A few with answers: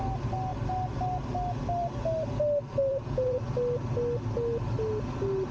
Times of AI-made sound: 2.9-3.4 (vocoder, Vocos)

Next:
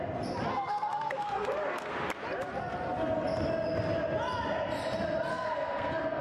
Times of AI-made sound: 0.5-1.9 (codec, SNAC); 5.3-6.2

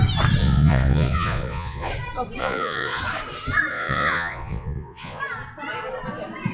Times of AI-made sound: 0.4-1.9 (vocoder, Vocos); 2.4-3.0; 3.7-5.2

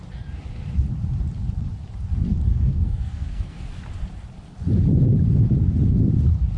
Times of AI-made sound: 2.5-3.6 (codec, SNAC)